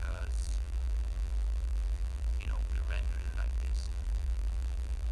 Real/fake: fake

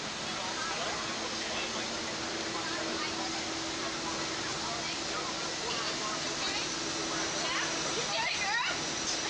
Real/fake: real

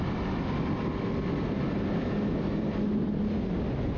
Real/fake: real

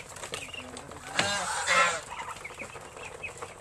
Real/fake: real